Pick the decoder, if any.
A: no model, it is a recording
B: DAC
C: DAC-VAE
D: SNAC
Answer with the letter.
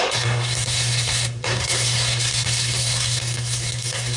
D